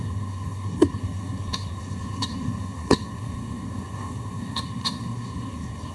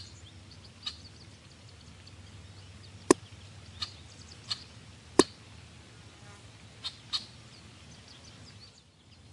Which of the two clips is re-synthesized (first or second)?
first